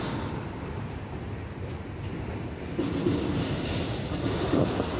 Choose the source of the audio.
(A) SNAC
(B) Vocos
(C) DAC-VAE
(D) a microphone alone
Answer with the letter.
D